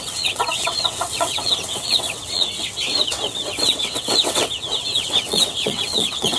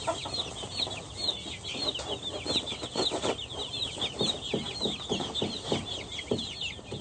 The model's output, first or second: first